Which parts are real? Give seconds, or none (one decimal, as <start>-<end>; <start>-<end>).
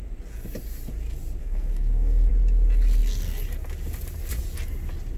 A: 0.0-1.4; 2.3-5.2